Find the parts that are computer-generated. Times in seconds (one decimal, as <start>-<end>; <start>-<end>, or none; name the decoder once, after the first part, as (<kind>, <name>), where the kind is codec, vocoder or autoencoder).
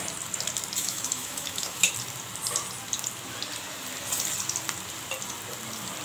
0.8-1.9 (autoencoder, DAC-VAE)